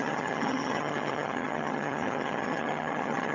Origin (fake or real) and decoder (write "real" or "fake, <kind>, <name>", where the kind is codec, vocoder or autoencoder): fake, vocoder, HiFi-GAN